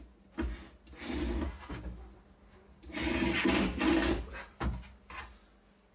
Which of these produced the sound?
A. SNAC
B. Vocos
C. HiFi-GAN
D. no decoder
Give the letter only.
D